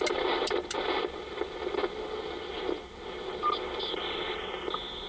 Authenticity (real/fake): real